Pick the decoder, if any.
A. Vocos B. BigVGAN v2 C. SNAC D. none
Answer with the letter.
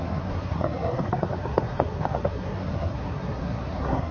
C